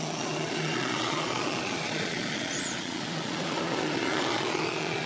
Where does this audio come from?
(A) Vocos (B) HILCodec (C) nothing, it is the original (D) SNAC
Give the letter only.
A